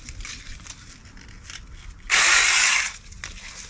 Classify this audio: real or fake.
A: real